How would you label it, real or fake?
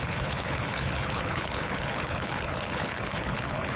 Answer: fake